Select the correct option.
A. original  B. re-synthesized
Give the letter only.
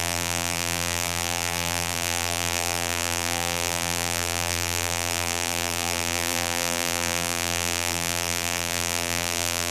B